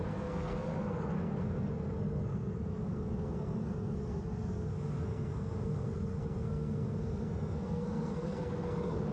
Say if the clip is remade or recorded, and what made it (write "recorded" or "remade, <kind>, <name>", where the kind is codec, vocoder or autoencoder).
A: remade, codec, SNAC